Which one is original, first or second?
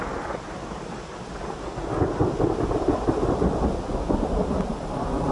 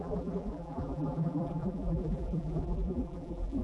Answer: first